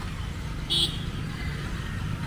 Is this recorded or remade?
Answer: recorded